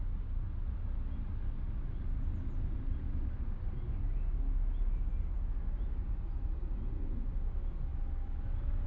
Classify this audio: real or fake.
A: real